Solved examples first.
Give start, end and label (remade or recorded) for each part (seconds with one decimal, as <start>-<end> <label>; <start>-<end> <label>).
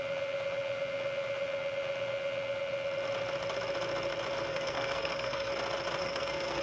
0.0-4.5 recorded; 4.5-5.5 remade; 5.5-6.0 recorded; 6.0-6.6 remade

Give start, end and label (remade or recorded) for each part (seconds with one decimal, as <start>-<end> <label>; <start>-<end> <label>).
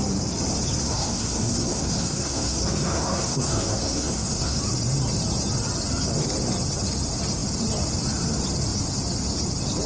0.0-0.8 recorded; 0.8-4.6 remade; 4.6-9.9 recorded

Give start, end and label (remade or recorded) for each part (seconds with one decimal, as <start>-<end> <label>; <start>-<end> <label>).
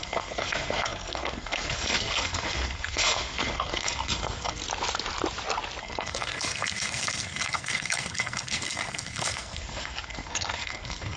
0.0-4.6 remade; 4.6-5.8 recorded; 5.8-11.2 remade